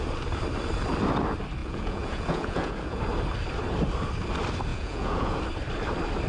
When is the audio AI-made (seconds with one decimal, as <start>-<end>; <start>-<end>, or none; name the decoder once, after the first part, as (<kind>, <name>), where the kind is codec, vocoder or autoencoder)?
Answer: 1.6-3.0 (vocoder, Vocos); 4.7-5.4